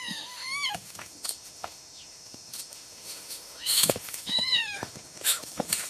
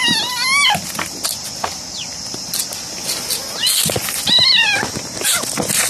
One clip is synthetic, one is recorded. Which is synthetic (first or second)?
first